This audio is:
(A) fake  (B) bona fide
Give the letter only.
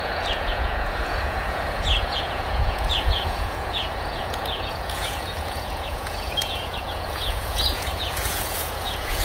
A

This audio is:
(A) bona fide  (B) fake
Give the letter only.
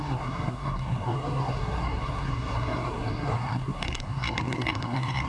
B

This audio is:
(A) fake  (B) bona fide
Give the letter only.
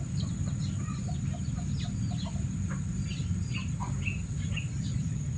B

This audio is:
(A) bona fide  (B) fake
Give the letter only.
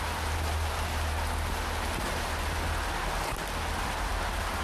A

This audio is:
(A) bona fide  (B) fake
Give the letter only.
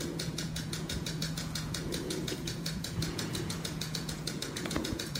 B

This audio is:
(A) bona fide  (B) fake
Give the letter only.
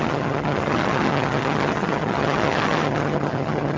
B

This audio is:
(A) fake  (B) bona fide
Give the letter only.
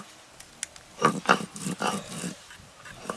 B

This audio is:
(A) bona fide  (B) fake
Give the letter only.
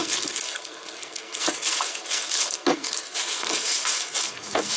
B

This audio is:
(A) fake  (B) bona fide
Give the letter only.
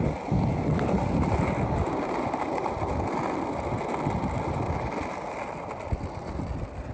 B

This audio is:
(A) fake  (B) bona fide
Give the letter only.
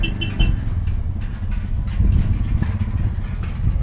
B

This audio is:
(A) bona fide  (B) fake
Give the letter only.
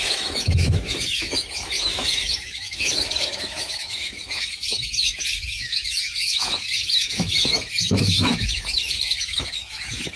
B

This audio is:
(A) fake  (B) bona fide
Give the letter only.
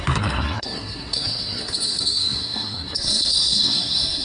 A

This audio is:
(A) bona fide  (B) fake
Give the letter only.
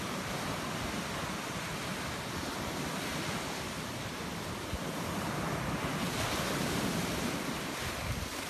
A